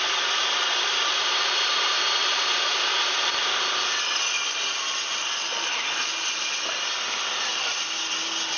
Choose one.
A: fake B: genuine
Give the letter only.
B